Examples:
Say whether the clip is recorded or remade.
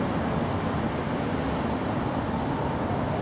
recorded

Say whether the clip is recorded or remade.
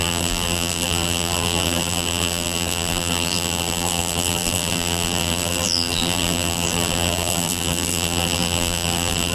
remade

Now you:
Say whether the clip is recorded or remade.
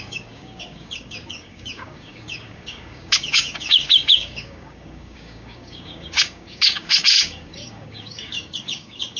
remade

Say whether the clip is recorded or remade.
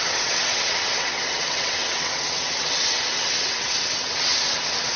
remade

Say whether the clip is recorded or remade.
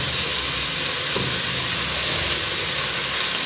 recorded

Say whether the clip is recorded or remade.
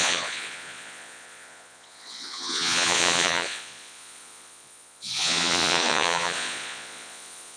remade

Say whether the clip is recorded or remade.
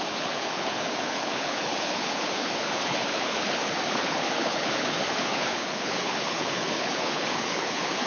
remade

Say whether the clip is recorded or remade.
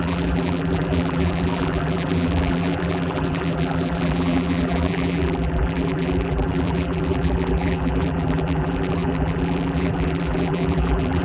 remade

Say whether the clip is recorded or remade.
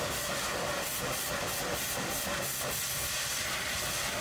recorded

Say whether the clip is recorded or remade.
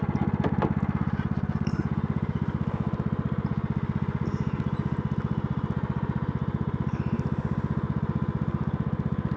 recorded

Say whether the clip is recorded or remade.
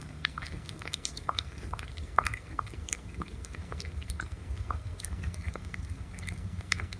remade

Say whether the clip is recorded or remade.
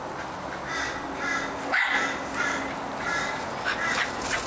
recorded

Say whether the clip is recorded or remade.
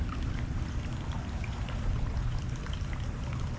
recorded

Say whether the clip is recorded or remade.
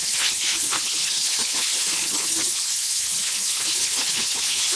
remade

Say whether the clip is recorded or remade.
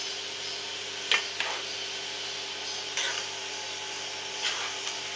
recorded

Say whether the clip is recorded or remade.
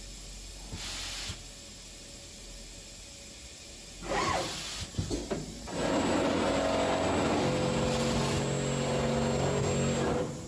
recorded